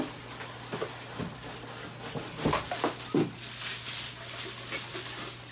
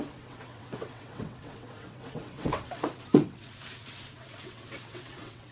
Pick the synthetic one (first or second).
second